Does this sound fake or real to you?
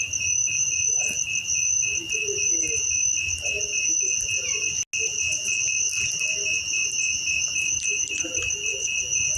real